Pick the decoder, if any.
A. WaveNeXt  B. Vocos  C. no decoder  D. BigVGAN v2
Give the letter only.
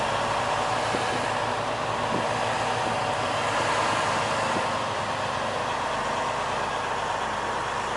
C